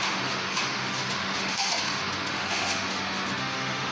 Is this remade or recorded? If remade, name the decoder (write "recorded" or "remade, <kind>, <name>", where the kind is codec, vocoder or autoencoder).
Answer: remade, autoencoder, DAC-VAE